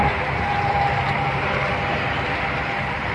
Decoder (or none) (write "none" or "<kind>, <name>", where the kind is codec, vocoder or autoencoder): vocoder, BigVGAN v2